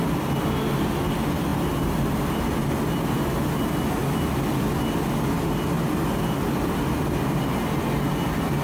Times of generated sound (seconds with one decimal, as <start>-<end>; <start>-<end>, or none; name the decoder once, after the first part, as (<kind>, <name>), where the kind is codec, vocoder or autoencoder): none